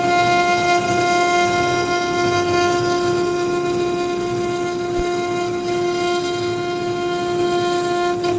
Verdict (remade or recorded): recorded